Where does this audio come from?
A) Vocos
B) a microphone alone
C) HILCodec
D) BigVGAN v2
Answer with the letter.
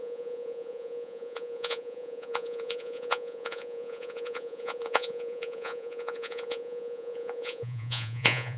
A